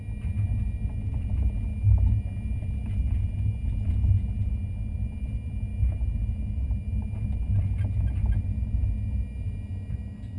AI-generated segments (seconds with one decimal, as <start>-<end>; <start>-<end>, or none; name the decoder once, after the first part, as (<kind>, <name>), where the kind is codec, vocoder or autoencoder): none